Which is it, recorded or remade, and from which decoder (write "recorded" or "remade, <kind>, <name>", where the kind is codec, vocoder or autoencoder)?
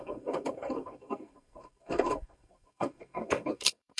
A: remade, codec, SNAC